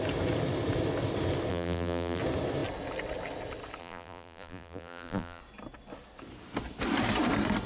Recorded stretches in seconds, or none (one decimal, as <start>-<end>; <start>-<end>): 0.0-1.5; 2.2-3.8; 5.4-7.7